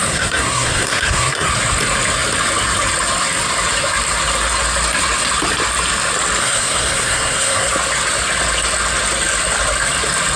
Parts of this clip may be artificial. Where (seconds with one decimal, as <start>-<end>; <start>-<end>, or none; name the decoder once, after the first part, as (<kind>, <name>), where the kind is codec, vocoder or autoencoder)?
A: 0.0-1.5 (codec, SNAC); 6.4-7.7